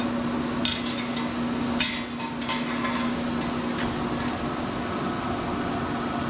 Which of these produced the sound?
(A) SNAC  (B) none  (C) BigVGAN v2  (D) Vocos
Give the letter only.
B